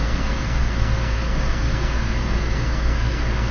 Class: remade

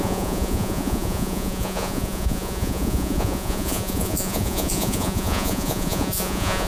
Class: remade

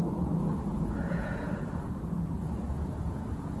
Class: remade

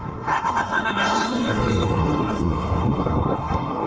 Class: remade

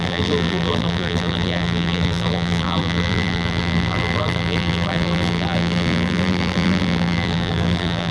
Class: remade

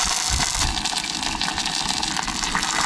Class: recorded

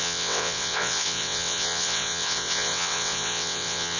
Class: remade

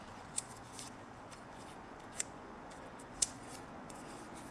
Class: remade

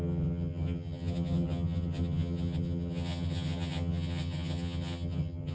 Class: remade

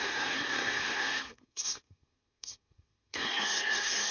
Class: remade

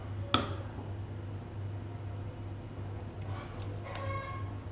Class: recorded